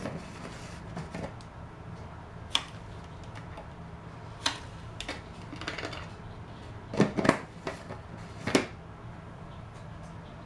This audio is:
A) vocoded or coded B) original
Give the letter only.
B